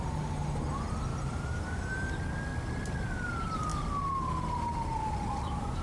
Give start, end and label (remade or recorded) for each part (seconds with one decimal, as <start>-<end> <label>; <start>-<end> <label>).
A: 0.0-1.1 recorded; 1.1-1.9 remade; 1.9-5.8 recorded